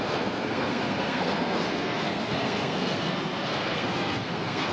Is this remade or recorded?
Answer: remade